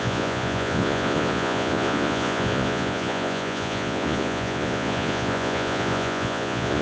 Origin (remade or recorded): remade